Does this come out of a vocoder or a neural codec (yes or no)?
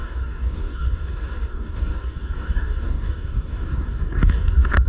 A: yes